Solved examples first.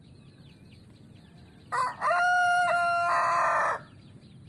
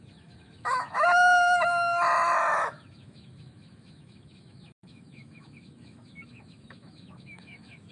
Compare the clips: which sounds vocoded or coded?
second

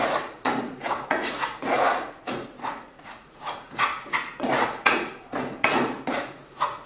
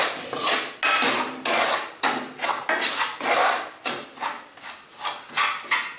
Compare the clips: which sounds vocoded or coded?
first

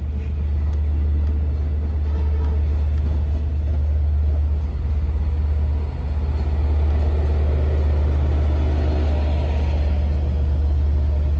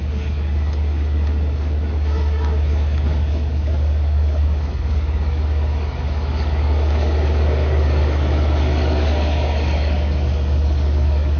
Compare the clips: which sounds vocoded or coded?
second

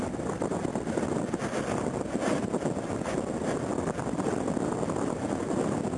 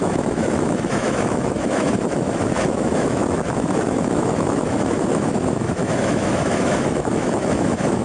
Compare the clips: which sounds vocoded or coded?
second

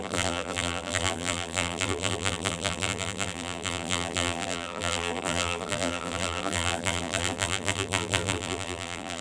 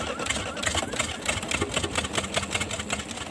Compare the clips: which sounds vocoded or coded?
first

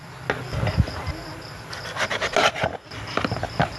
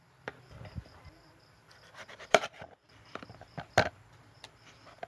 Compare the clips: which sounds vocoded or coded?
second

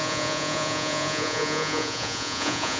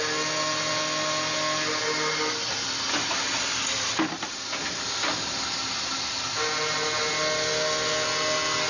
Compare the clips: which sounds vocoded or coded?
first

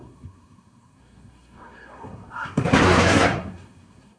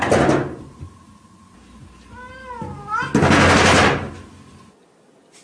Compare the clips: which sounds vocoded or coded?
first